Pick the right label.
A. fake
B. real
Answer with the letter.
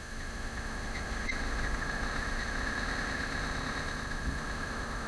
A